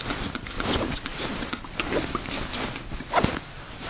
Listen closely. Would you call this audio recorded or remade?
recorded